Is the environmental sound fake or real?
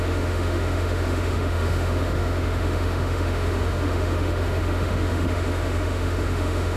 fake